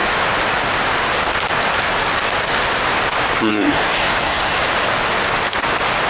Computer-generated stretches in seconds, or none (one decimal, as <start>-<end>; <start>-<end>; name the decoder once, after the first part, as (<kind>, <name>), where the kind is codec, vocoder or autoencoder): 3.5-4.7 (codec, SNAC)